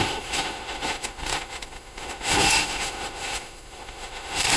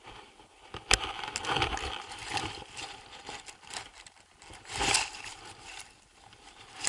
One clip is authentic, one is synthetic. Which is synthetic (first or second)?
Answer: first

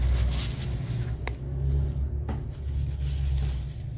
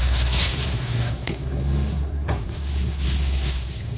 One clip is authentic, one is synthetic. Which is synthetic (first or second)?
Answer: second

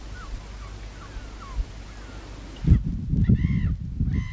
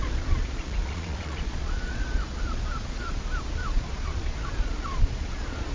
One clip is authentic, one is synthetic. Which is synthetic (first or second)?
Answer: second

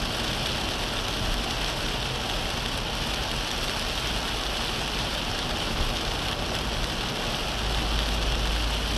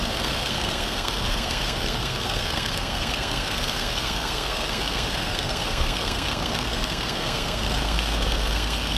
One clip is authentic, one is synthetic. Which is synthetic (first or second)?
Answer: second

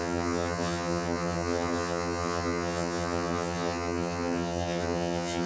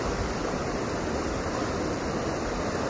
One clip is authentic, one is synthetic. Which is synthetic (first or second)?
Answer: first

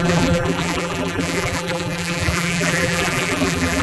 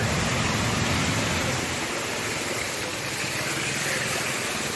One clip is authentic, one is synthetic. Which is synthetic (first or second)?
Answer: first